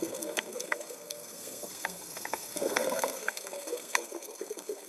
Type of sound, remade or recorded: remade